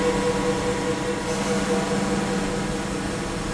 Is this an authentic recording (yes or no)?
yes